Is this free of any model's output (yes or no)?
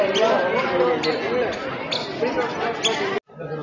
yes